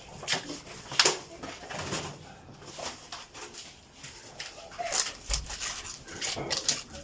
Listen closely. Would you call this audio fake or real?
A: real